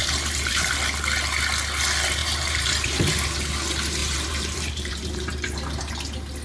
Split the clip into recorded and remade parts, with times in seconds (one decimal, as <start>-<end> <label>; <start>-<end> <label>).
0.0-0.7 remade; 0.7-2.2 recorded; 2.2-3.1 remade; 3.1-4.0 recorded; 4.0-5.8 remade; 5.8-6.4 recorded